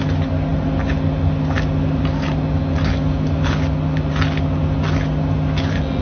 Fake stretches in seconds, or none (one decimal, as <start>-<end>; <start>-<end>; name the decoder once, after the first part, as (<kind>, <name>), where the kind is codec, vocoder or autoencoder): none

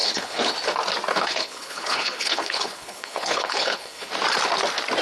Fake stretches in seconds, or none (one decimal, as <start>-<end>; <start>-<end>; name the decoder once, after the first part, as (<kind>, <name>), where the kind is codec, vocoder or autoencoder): 0.0-0.5 (codec, HILCodec); 1.1-4.1

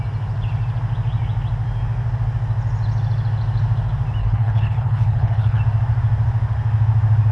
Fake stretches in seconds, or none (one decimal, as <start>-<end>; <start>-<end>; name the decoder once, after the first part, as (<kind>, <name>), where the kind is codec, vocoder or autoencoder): 4.2-5.6 (codec, HILCodec)

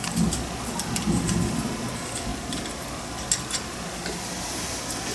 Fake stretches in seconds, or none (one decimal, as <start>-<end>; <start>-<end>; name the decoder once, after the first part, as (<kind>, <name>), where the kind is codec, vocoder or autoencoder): none

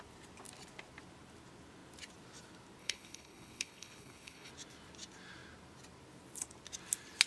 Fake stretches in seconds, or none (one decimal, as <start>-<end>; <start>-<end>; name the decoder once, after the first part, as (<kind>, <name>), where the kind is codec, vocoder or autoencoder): 2.8-4.5 (codec, HILCodec)

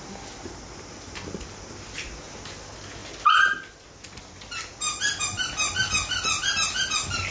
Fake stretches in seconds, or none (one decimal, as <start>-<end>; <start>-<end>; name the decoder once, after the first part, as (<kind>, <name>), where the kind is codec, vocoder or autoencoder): none

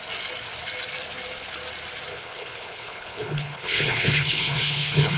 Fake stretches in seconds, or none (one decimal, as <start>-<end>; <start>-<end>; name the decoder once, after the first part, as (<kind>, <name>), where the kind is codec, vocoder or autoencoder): 2.1-5.2 (codec, HILCodec)